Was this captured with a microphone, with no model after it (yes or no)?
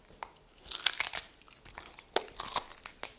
yes